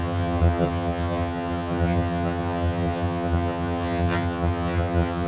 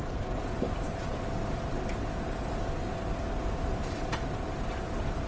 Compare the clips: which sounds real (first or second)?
second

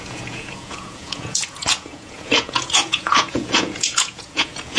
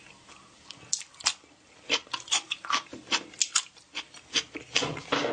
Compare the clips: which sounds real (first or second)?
second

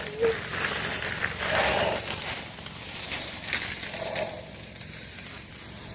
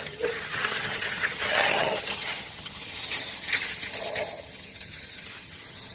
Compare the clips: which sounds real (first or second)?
first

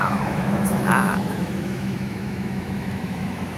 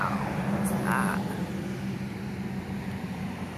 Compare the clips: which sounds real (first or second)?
second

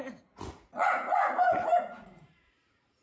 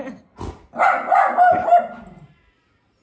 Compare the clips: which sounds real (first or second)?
second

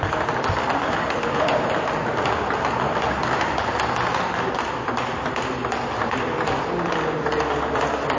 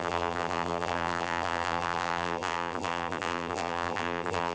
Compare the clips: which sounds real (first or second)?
first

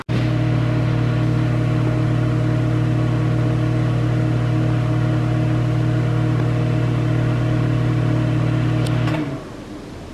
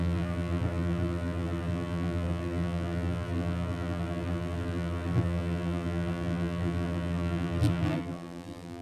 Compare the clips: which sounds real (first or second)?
first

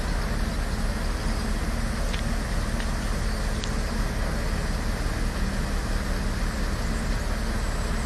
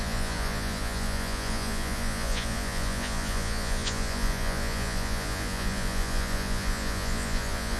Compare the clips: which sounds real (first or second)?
first